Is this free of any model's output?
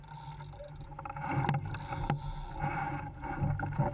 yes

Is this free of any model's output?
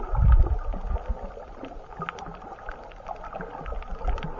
yes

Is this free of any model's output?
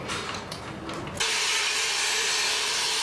yes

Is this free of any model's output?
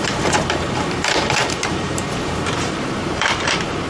no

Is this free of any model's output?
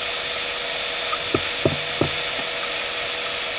yes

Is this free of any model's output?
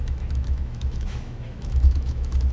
no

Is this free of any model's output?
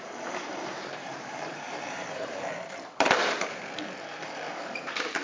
no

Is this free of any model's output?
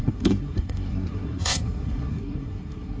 no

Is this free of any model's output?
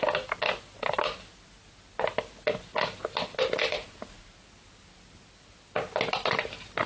yes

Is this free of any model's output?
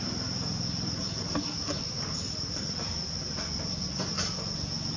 yes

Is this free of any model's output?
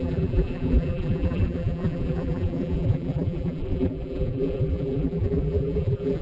no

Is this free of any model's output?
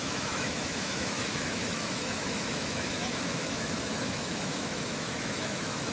no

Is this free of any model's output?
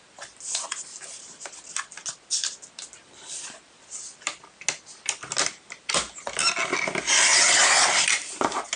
yes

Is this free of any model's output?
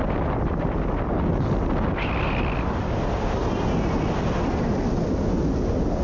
yes